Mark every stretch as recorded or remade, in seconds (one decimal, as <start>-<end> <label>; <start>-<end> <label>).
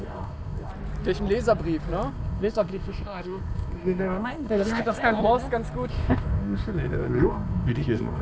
0.0-0.7 remade; 0.7-2.1 recorded; 2.1-5.2 remade; 5.2-5.9 recorded; 5.9-8.2 remade